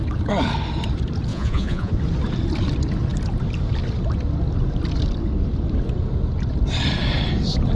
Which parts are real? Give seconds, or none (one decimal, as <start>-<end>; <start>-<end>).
0.0-1.3; 1.9-7.8